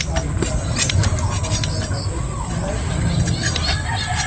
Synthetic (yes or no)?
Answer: no